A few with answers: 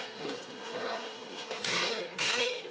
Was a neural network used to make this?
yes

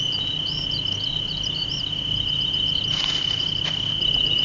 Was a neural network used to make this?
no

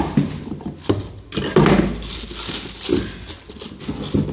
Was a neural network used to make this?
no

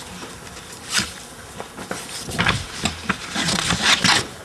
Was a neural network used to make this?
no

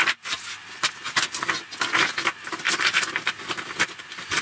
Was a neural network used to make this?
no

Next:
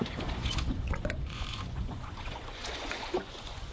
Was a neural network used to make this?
yes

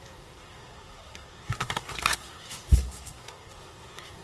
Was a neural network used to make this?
yes